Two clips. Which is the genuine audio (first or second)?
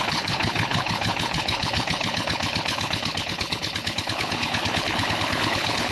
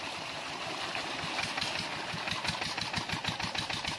second